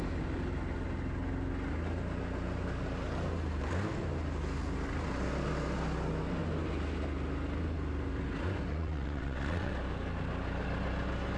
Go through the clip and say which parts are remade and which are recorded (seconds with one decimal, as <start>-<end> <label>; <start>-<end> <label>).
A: 0.0-8.7 recorded; 8.7-9.7 remade; 9.7-11.4 recorded